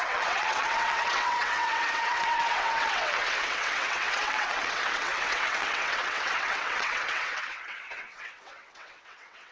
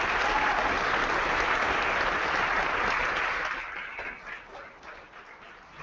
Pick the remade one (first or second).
first